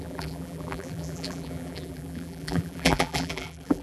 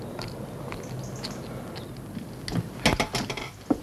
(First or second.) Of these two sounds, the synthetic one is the first